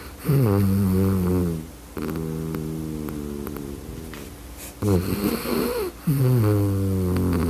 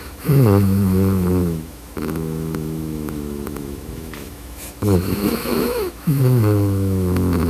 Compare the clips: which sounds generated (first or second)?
second